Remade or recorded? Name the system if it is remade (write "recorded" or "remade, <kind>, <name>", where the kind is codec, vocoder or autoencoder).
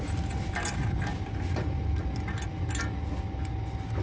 recorded